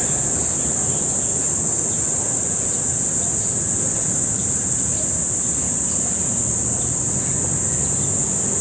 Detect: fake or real real